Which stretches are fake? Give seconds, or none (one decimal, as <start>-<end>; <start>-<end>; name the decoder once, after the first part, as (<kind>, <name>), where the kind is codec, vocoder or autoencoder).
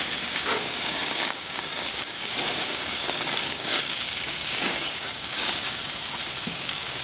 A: 0.0-5.8 (codec, DAC); 6.4-7.0